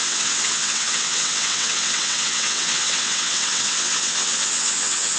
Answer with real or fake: fake